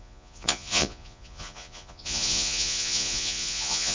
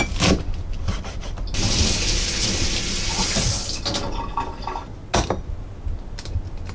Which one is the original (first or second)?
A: second